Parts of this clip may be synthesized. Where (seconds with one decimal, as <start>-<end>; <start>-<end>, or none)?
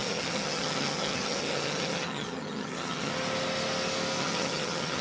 0.0-3.1; 4.2-5.0